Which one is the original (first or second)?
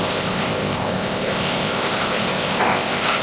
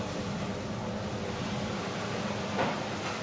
second